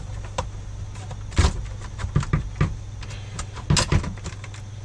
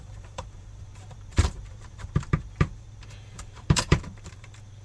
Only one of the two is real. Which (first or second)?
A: first